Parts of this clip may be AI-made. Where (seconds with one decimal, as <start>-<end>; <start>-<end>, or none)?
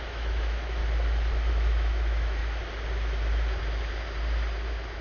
0.0-0.8; 1.5-2.4